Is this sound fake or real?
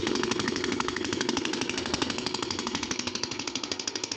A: fake